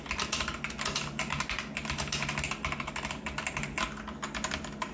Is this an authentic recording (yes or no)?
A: yes